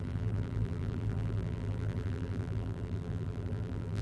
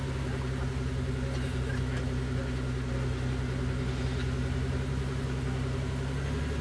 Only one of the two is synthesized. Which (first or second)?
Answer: first